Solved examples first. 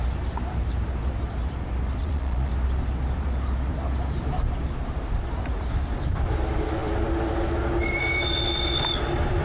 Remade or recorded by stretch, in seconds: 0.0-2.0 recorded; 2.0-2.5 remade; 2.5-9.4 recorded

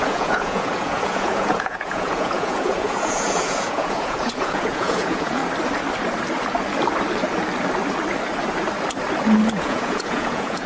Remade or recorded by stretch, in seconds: 0.0-5.4 remade; 5.4-9.6 recorded; 9.6-10.7 remade

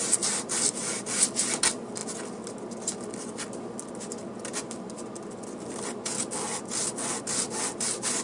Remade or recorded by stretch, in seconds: 0.0-8.2 remade

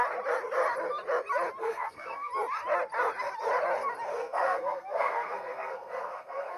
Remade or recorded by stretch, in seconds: 0.0-1.6 recorded; 1.6-2.3 remade; 2.3-4.1 recorded; 4.1-6.6 remade

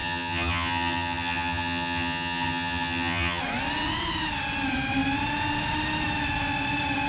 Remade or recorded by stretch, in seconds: 0.0-3.4 remade; 3.4-7.1 recorded